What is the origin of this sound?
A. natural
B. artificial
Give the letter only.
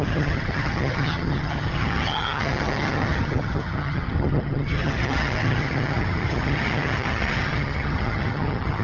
B